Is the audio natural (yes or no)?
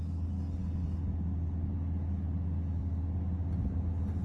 yes